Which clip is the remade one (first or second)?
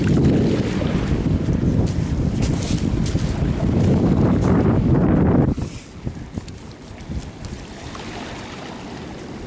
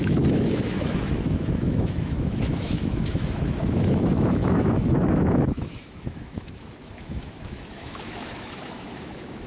second